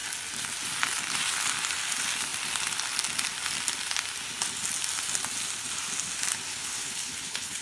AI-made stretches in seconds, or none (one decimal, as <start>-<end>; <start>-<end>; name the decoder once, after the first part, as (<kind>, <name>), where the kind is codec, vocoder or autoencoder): 6.5-7.6 (codec, HILCodec)